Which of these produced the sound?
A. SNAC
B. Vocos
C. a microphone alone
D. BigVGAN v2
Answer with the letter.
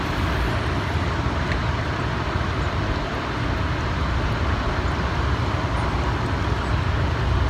C